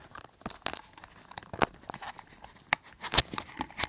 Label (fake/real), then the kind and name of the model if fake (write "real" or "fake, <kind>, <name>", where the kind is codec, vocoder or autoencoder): real